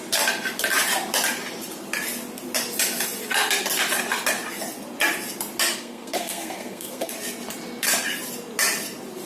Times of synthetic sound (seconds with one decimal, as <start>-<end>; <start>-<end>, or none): 5.7-7.1